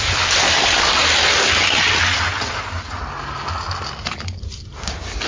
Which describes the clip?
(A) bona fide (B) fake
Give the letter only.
A